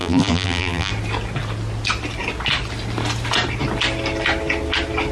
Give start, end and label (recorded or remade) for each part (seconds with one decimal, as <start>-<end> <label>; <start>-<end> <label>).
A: 0.0-0.9 remade; 0.9-5.1 recorded